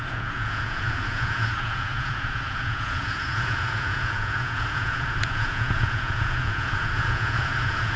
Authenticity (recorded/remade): remade